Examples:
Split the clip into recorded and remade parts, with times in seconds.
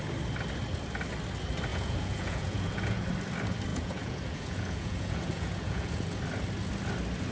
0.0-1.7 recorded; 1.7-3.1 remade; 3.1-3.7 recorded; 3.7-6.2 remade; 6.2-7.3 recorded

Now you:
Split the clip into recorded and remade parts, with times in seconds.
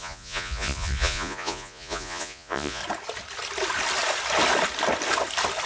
0.0-2.8 remade; 2.8-5.7 recorded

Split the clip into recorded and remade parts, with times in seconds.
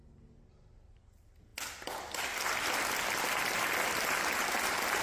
0.0-5.0 recorded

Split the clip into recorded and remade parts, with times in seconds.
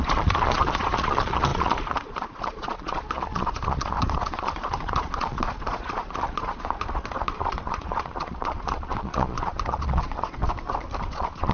0.0-10.4 remade; 10.4-11.0 recorded; 11.0-11.5 remade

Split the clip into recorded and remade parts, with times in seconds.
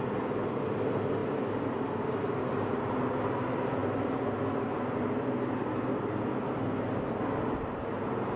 0.0-8.4 recorded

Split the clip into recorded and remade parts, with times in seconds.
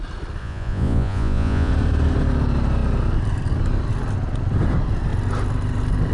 0.0-0.4 recorded; 0.4-1.7 remade; 1.7-6.1 recorded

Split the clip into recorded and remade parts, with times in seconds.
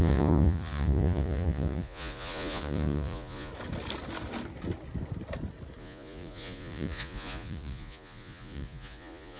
0.0-3.5 remade; 3.5-5.8 recorded; 5.8-9.4 remade